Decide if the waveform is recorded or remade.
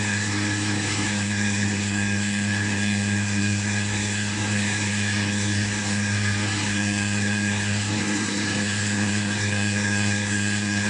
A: remade